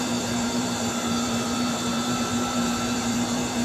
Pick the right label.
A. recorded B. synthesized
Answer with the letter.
B